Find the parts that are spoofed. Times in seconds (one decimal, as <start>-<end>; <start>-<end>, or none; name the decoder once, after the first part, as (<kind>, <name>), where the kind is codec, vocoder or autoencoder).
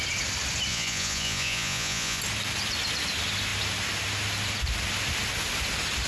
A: 0.7-2.2 (vocoder, Vocos)